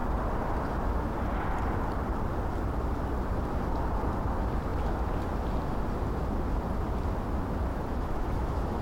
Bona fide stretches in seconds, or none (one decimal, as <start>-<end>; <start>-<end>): 0.0-7.7